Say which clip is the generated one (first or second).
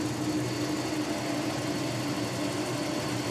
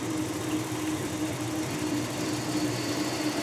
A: second